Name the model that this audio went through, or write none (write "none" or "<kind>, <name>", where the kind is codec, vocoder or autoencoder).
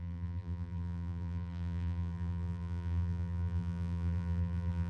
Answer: vocoder, BigVGAN v2